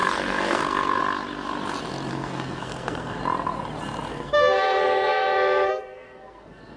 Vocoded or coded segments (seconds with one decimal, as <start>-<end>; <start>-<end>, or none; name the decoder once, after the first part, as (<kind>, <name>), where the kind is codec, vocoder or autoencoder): 0.0-1.0 (codec, SNAC); 2.1-3.2; 4.1-6.8